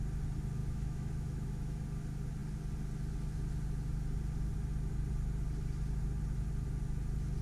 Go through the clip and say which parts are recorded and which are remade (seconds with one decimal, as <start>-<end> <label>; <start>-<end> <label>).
0.0-0.6 recorded; 0.6-1.8 remade; 1.8-7.4 recorded